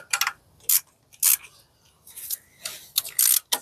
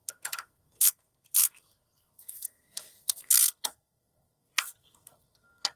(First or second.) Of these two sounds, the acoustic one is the first